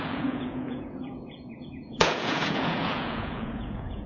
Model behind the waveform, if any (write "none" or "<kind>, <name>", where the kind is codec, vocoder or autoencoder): vocoder, Vocos